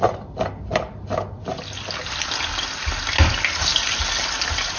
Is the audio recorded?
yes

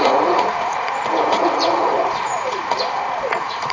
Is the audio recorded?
no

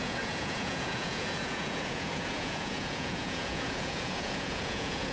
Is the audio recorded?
no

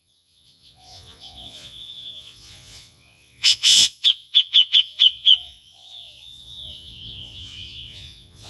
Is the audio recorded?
no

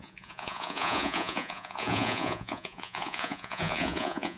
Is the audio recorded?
no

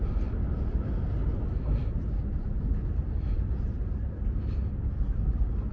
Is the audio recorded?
yes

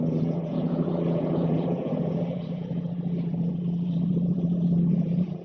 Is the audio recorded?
no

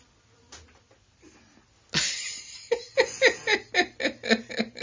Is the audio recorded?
yes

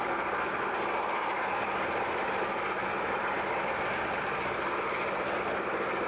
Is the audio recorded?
yes